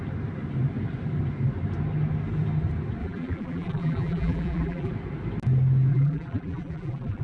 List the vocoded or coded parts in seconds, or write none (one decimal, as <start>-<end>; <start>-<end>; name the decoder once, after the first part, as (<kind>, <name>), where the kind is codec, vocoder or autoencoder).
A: 3.0-4.9 (vocoder, BigVGAN v2); 5.9-7.2